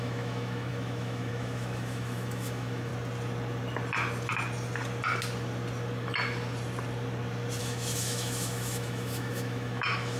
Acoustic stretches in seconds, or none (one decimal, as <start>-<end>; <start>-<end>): 2.9-7.6

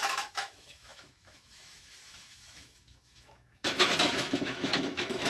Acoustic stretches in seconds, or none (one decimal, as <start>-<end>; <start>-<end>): none

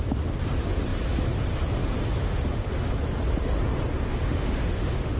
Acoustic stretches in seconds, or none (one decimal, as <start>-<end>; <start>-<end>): 0.0-2.2; 2.9-4.1

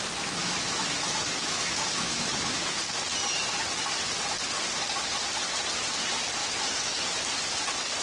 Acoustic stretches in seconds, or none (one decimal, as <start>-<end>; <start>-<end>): 0.0-0.4; 2.8-6.4; 7.3-8.0

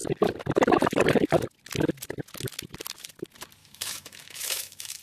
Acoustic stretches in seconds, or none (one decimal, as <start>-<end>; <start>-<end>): 0.0-3.6

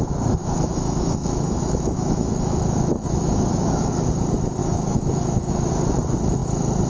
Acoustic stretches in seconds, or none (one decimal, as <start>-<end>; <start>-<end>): 0.0-0.4; 3.9-4.6; 5.7-6.9

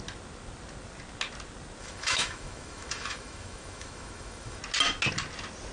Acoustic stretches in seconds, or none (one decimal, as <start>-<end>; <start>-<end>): 0.0-1.8; 4.6-5.7